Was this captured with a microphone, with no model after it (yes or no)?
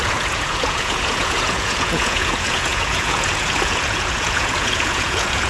no